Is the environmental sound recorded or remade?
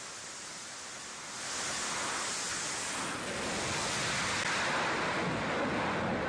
recorded